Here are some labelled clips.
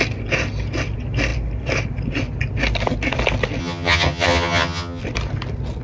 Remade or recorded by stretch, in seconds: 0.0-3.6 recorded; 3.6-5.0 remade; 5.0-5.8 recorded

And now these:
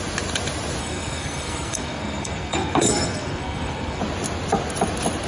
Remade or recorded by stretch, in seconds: 0.0-0.8 recorded; 0.8-4.0 remade; 4.0-5.3 recorded

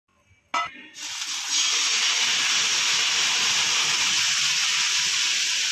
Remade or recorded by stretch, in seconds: 0.0-5.7 recorded

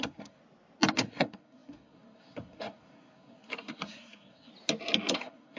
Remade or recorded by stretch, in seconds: 0.0-0.4 remade; 0.4-0.9 recorded; 0.9-4.5 remade; 4.5-5.1 recorded; 5.1-5.6 remade

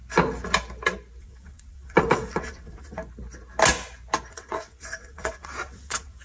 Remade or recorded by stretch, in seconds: 0.0-1.2 recorded; 1.2-3.0 remade; 3.0-4.3 recorded; 4.3-6.2 remade

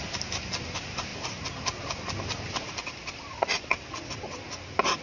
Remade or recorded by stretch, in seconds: 0.0-5.0 recorded

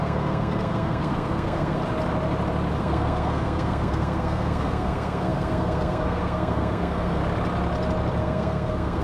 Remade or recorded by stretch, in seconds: 0.0-1.8 remade; 1.8-2.8 recorded; 2.8-7.2 remade; 7.2-8.2 recorded; 8.2-9.0 remade

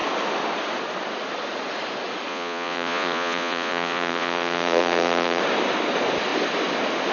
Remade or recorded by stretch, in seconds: 0.0-2.3 recorded; 2.3-5.4 remade; 5.4-7.1 recorded